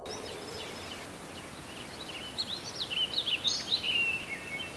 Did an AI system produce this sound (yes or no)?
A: no